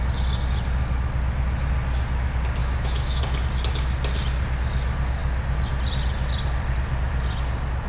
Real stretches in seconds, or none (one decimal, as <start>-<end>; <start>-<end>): 0.0-2.6; 3.2-7.9